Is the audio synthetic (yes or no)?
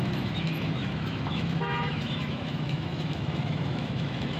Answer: yes